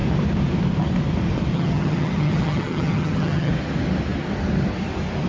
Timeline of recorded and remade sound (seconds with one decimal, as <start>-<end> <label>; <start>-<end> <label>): 0.0-1.5 recorded; 1.5-3.5 remade; 3.5-5.3 recorded